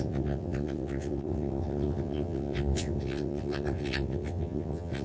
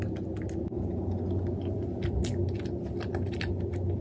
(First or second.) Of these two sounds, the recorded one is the second